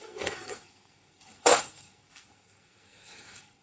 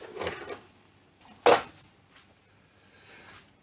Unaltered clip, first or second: second